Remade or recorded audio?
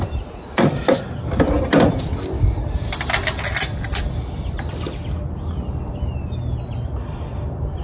recorded